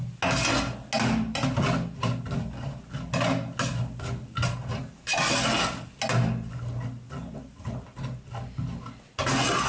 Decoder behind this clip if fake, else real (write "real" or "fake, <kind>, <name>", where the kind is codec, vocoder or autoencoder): real